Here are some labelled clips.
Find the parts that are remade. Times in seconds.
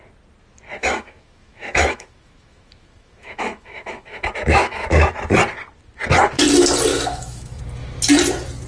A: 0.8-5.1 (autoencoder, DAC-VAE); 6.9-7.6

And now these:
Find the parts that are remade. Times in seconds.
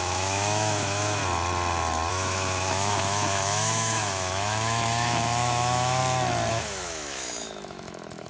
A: 0.0-1.2 (autoencoder, DAC-VAE); 2.1-6.0; 6.5-8.3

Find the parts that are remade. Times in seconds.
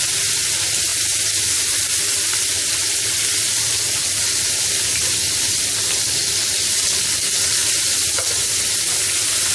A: none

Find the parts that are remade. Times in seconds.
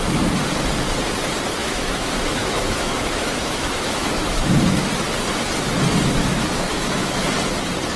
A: 1.6-4.9 (autoencoder, DAC-VAE); 6.2-7.2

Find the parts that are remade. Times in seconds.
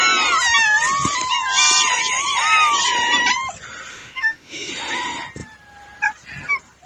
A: 3.9-4.7 (autoencoder, DAC-VAE)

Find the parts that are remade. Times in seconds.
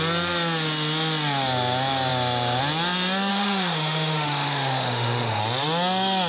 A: 3.3-5.4 (autoencoder, DAC-VAE)